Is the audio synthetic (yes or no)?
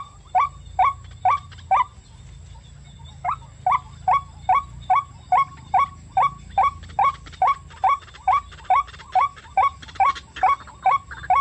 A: no